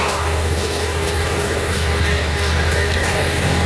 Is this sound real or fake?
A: fake